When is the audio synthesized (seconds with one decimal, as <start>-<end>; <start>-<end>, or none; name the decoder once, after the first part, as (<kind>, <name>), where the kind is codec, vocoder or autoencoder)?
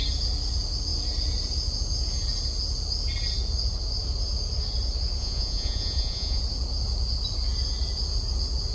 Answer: 5.2-6.4 (vocoder, Vocos)